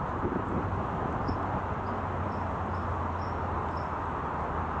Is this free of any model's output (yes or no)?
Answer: yes